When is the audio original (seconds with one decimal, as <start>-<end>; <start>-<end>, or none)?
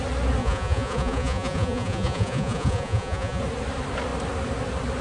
0.0-0.4; 3.4-5.0